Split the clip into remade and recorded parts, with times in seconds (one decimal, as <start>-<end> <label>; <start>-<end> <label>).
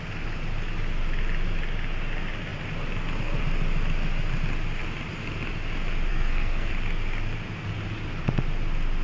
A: 0.0-6.1 recorded; 6.1-6.7 remade; 6.7-9.0 recorded